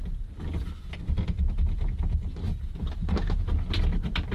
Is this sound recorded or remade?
recorded